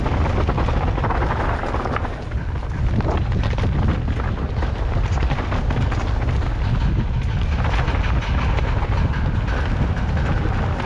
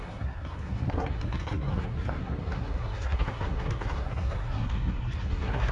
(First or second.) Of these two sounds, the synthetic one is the second